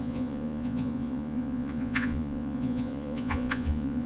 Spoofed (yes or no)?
yes